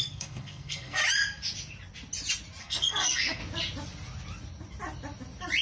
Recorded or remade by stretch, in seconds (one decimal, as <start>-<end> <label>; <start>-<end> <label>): 0.0-1.0 remade; 1.0-2.6 recorded; 2.6-3.4 remade; 3.4-5.6 recorded